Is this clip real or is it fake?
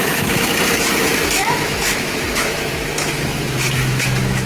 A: fake